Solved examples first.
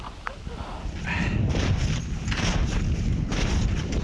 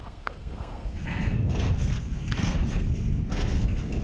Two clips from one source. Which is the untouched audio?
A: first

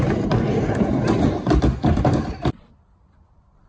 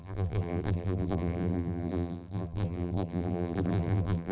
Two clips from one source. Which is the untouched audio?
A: first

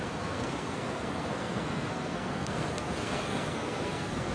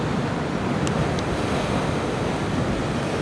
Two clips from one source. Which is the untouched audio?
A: second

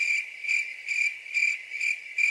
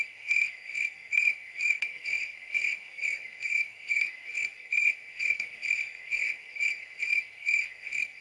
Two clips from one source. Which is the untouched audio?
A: first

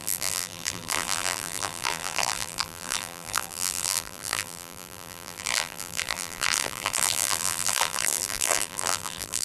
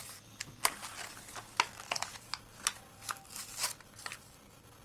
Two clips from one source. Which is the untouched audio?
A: second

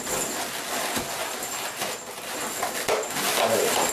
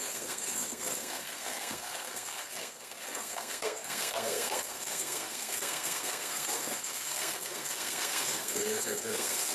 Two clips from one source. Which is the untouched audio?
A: first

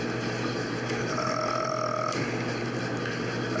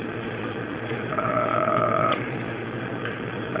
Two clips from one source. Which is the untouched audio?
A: first